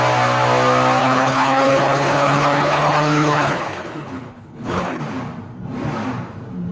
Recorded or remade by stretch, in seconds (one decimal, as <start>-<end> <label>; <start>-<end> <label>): 0.0-1.0 recorded; 1.0-5.0 remade; 5.0-6.7 recorded